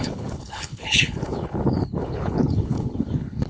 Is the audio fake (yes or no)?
yes